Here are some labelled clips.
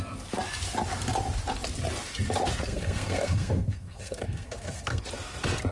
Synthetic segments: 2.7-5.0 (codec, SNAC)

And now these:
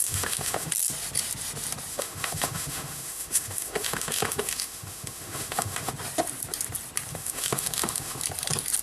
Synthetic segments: 0.0-0.7 (autoencoder, DAC-VAE); 1.9-5.9; 7.1-8.2